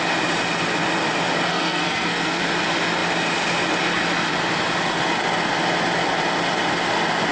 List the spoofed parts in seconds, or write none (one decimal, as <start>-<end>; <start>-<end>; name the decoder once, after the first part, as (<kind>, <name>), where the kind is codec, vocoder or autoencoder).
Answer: 1.5-2.4 (codec, SNAC)